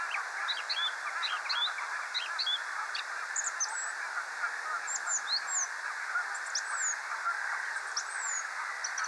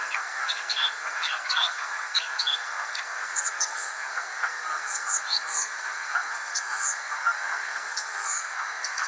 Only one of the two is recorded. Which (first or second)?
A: first